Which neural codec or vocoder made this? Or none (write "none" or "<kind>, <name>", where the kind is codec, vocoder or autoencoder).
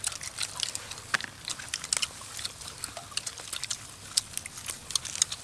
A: none